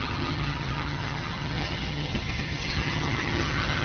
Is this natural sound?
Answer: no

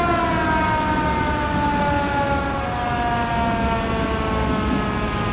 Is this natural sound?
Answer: yes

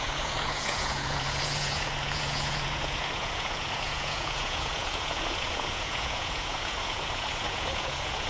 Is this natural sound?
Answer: no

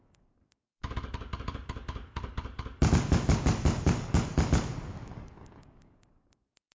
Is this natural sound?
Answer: no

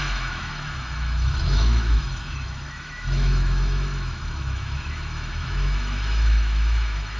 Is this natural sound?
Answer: no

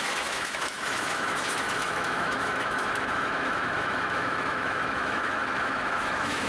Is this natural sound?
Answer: no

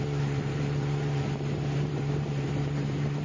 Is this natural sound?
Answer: no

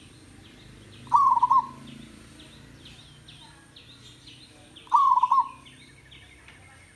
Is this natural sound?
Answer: yes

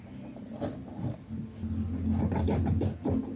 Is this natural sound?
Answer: yes